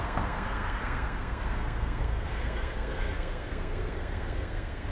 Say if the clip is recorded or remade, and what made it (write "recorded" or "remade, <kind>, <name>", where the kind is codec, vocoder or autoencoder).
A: remade, codec, SNAC